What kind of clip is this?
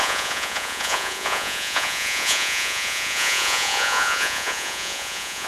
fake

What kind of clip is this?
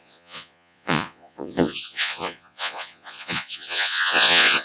fake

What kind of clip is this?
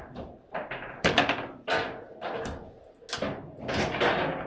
real